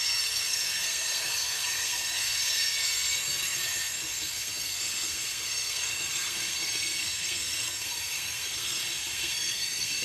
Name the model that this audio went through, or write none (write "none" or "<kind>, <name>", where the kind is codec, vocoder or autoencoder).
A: codec, SNAC